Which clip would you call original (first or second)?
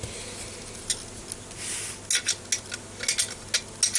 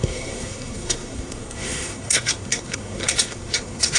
first